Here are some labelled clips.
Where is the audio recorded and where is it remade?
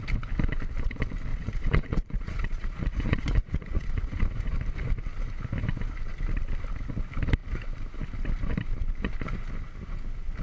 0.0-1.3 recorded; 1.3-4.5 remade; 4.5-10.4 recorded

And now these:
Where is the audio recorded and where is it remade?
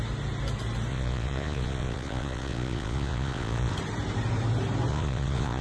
0.0-0.9 recorded; 0.9-3.7 remade; 3.7-4.9 recorded; 4.9-5.6 remade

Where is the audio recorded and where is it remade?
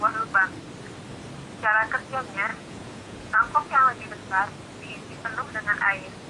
0.0-2.5 recorded; 2.5-4.1 remade; 4.1-6.3 recorded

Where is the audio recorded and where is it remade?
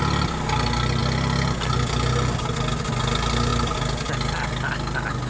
0.0-5.3 recorded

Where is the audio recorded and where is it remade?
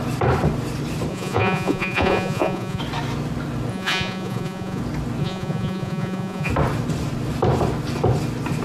0.0-1.1 recorded; 1.1-2.8 remade; 2.8-3.7 recorded; 3.7-4.8 remade; 4.8-5.2 recorded; 5.2-6.5 remade; 6.5-8.6 recorded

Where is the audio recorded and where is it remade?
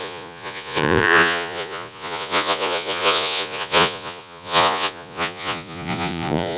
0.0-6.6 remade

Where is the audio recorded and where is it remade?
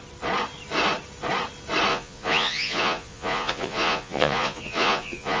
0.0-1.9 recorded; 1.9-5.4 remade